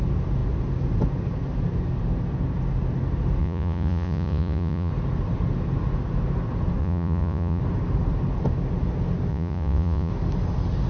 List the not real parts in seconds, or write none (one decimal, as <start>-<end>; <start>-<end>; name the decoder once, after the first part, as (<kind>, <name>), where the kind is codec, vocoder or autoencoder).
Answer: 3.4-4.9 (vocoder, Vocos); 6.8-7.6; 9.3-10.1